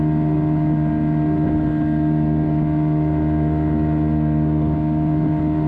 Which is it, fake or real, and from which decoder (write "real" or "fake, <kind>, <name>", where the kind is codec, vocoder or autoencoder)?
real